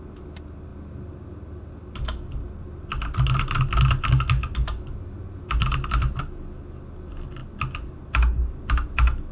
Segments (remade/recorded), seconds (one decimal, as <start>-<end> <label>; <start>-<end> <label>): 0.0-9.3 recorded